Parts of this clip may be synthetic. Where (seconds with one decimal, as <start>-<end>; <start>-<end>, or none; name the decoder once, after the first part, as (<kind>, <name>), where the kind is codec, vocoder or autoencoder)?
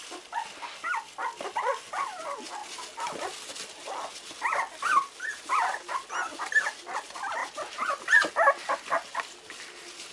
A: none